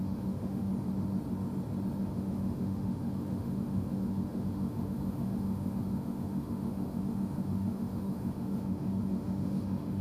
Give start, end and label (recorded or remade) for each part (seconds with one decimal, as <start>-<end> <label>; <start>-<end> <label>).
0.0-0.7 remade; 0.7-2.0 recorded; 2.0-10.0 remade